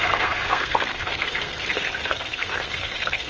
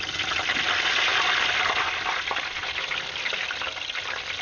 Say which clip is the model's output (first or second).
first